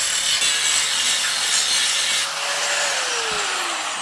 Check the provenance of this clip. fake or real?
real